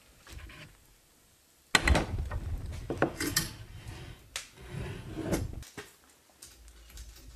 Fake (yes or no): no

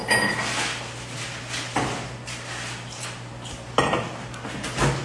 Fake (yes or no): no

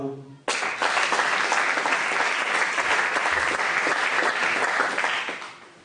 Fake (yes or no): no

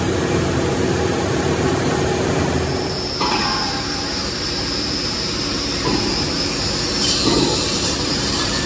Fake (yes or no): yes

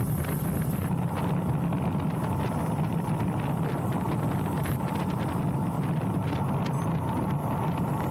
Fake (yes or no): no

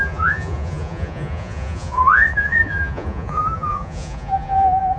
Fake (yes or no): yes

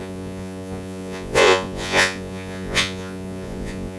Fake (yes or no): yes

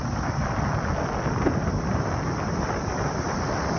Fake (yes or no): no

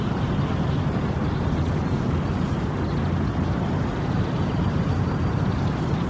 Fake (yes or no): no